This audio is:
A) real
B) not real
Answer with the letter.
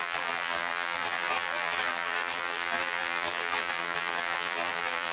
B